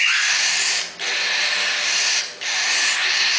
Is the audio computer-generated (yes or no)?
no